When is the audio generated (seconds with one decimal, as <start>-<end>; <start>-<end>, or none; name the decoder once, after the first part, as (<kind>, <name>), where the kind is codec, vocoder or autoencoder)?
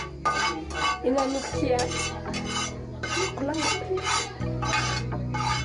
2.9-4.4 (vocoder, BigVGAN v2)